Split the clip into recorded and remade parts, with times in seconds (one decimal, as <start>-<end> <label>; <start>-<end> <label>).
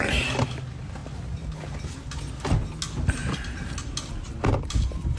0.0-1.0 remade; 1.0-4.1 recorded; 4.1-5.2 remade